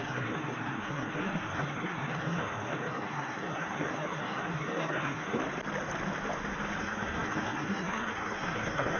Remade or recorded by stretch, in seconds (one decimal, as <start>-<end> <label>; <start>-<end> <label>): 0.0-5.4 remade; 5.4-6.8 recorded; 6.8-9.0 remade